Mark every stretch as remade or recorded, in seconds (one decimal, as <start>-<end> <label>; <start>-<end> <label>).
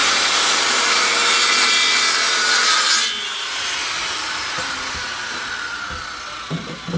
0.0-1.1 remade; 1.1-3.3 recorded; 3.3-5.5 remade; 5.5-7.0 recorded